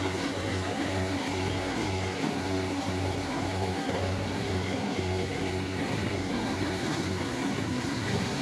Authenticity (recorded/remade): remade